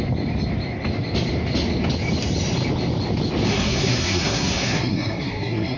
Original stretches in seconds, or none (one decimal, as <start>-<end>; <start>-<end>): 0.0-3.5

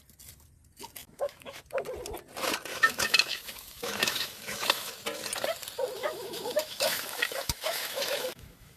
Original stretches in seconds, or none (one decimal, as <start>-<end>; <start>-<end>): 0.0-1.0; 1.6-2.7; 4.9-6.0

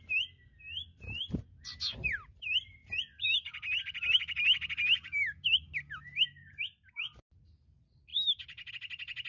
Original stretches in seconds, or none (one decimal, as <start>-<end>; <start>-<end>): 0.0-9.3